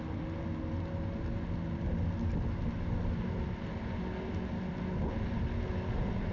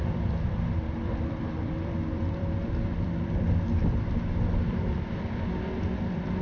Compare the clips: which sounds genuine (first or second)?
first